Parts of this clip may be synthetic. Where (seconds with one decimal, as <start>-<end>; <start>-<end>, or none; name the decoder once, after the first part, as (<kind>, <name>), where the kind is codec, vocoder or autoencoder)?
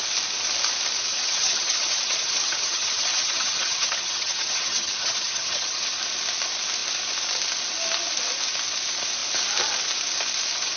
1.1-5.8 (vocoder, HiFi-GAN)